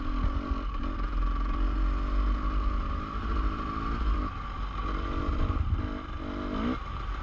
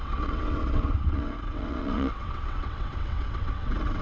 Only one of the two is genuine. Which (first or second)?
first